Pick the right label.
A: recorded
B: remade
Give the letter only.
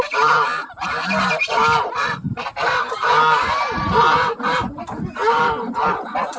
A